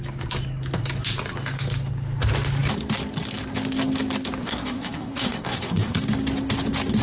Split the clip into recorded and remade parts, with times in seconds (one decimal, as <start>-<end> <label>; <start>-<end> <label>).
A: 0.0-4.4 recorded; 4.4-6.0 remade; 6.0-7.0 recorded